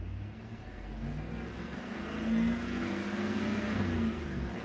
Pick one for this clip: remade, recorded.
remade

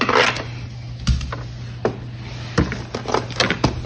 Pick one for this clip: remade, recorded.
recorded